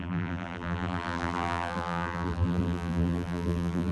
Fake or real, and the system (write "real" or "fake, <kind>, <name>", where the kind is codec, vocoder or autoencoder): fake, vocoder, BigVGAN v2